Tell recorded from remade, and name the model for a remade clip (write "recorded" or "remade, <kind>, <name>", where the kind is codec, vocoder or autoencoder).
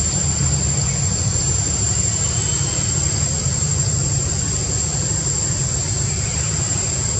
recorded